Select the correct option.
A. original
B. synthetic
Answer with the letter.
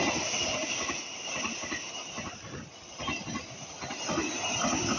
A